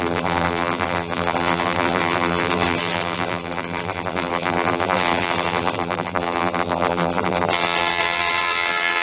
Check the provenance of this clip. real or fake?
fake